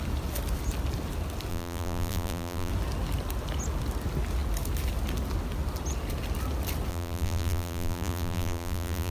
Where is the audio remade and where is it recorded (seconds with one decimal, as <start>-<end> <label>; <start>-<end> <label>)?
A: 0.0-1.5 recorded; 1.5-2.7 remade; 2.7-6.9 recorded; 6.9-9.1 remade